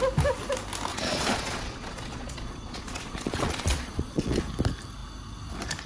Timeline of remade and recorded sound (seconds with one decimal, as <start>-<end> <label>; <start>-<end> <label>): 0.0-0.9 recorded; 0.9-4.4 remade; 4.4-5.9 recorded